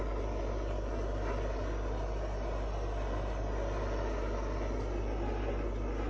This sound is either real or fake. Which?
real